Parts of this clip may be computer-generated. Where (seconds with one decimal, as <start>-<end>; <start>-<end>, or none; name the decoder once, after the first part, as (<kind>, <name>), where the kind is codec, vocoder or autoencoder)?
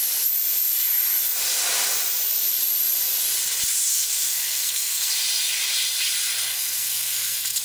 3.9-5.1 (codec, SNAC); 6.5-7.6